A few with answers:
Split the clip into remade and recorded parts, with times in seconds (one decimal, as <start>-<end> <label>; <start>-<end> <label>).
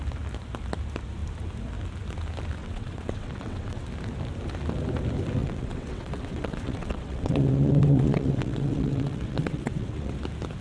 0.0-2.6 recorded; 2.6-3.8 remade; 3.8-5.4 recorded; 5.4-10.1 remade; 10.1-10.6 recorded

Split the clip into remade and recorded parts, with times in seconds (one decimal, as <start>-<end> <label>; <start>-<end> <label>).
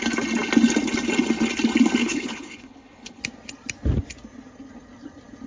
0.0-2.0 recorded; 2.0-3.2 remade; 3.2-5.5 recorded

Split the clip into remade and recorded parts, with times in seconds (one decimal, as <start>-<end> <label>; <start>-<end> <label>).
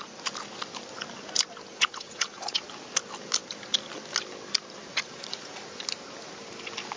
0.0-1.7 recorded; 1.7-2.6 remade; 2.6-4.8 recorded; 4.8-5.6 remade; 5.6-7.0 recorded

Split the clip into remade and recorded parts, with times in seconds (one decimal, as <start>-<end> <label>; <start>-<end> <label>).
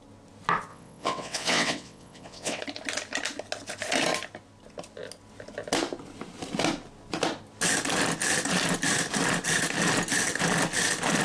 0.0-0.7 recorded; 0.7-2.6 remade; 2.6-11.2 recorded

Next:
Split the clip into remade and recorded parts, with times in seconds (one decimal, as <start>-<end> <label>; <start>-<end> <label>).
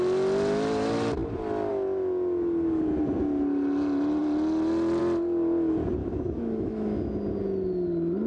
0.0-6.0 recorded; 6.0-7.1 remade; 7.1-8.3 recorded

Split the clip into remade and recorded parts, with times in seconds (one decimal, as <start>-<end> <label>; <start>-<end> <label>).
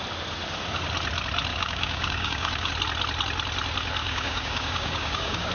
0.0-1.5 recorded; 1.5-2.7 remade; 2.7-4.0 recorded; 4.0-5.5 remade